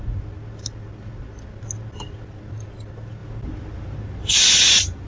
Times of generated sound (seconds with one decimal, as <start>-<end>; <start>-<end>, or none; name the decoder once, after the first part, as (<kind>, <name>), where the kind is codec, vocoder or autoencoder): none